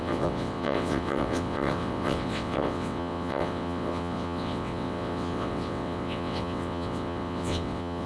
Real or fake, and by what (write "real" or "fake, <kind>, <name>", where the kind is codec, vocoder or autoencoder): fake, vocoder, WaveNeXt